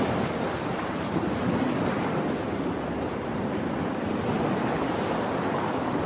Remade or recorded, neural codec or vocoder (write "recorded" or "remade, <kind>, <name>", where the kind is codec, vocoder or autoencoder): recorded